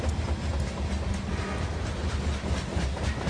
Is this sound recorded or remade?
recorded